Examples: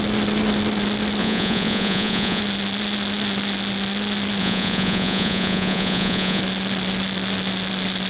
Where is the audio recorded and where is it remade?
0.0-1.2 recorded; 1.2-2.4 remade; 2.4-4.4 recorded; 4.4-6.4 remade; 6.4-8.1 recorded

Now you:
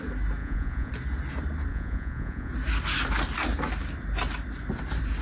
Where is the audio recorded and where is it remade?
0.0-0.4 recorded; 0.4-0.9 remade; 0.9-1.7 recorded; 1.7-2.5 remade; 2.5-5.2 recorded

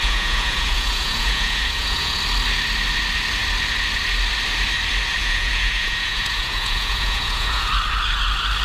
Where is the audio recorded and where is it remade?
0.0-2.2 remade; 2.2-5.2 recorded; 5.2-7.7 remade; 7.7-8.6 recorded

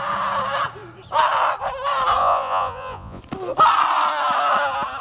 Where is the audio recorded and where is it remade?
0.0-2.2 recorded; 2.2-3.2 remade; 3.2-5.0 recorded